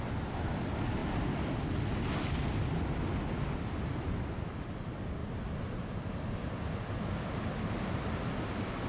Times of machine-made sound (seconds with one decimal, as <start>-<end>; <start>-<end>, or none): none